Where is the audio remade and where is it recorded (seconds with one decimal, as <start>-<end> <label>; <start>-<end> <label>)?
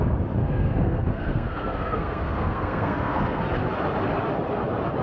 0.0-0.4 recorded; 0.4-3.4 remade; 3.4-5.0 recorded